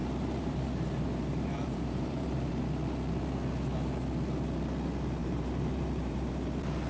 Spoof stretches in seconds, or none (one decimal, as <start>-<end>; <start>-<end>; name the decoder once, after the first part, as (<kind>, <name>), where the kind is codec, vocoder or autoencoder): 0.0-2.5 (vocoder, BigVGAN v2); 5.2-6.3

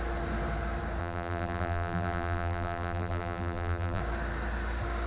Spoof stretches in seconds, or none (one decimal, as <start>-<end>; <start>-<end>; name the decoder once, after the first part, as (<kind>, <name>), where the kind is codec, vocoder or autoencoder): 1.0-4.0 (vocoder, BigVGAN v2)